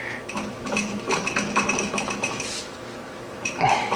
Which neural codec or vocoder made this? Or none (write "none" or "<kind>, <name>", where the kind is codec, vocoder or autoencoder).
autoencoder, DAC-VAE